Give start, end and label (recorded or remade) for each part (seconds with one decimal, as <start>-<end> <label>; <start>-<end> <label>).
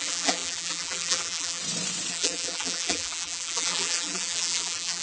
0.0-1.6 remade; 1.6-2.1 recorded; 2.1-5.0 remade